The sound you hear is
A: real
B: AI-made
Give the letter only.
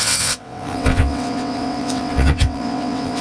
B